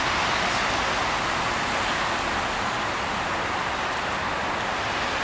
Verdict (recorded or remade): recorded